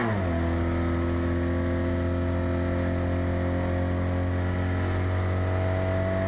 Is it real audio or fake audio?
real